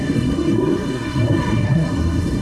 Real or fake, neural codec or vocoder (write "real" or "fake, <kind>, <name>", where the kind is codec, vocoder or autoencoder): fake, codec, SNAC